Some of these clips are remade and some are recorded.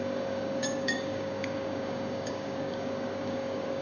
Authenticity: remade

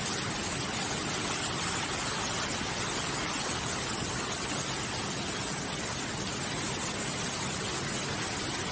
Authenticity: recorded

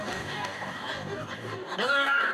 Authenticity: remade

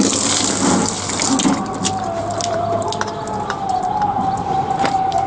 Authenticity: recorded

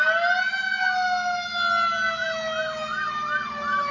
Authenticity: recorded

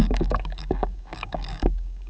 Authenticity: remade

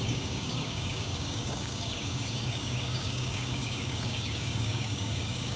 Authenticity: remade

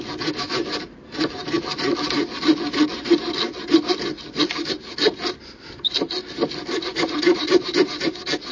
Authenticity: recorded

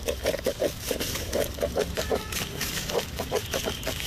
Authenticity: remade